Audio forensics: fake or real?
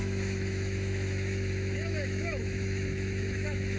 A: fake